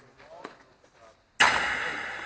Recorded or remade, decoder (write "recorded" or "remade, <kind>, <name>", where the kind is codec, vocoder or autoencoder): recorded